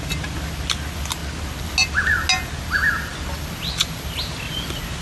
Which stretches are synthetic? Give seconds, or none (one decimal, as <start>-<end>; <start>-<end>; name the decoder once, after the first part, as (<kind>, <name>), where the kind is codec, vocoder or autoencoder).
none